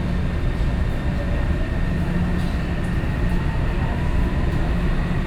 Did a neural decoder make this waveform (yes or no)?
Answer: no